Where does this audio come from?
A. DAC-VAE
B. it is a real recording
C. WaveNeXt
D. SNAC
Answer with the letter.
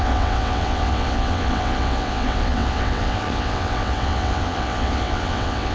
C